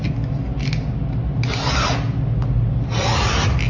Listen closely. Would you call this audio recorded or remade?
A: recorded